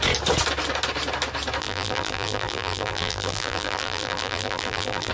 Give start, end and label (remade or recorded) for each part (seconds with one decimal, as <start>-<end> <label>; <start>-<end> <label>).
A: 0.0-1.6 recorded; 1.6-5.1 remade